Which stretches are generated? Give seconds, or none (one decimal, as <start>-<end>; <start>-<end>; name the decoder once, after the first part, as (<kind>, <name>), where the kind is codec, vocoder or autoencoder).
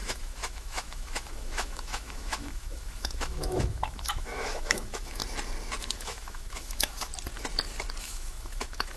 0.0-5.2 (autoencoder, DAC-VAE); 5.8-7.1; 8.0-9.0